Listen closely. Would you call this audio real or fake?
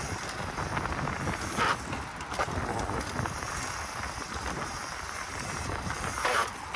real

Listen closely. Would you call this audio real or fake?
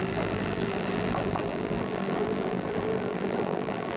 fake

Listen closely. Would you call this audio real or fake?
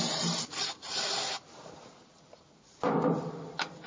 real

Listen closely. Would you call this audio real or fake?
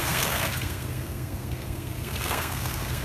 fake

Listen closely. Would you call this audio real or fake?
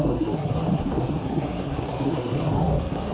fake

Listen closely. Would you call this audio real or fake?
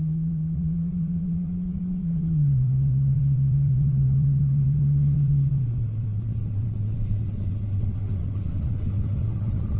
fake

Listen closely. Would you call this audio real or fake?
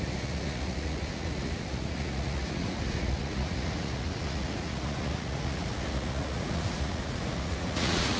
fake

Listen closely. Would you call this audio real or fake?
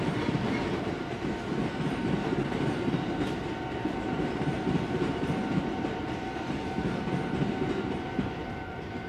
fake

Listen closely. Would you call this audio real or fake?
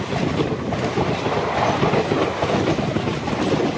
real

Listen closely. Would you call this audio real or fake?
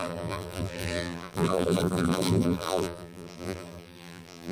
fake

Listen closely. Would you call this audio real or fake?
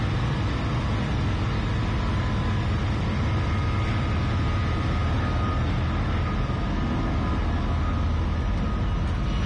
real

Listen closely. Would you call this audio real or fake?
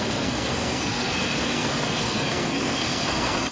fake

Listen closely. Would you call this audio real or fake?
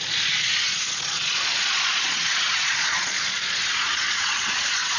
fake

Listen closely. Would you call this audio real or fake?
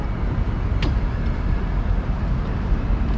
real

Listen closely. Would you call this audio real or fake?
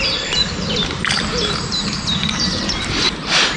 fake